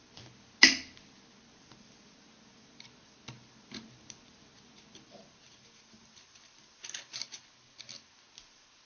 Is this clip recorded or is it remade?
recorded